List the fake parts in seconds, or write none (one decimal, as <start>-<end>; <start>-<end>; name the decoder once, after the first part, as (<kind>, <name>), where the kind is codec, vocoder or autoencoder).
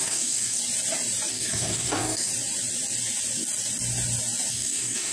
0.0-0.6 (codec, DAC); 1.3-2.3; 4.5-5.1